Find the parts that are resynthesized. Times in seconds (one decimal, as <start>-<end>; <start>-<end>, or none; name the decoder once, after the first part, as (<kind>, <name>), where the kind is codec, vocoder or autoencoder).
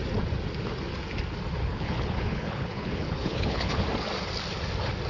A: 1.6-3.7 (codec, HILCodec)